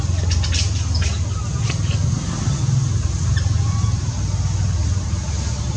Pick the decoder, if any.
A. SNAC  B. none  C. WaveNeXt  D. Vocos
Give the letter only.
B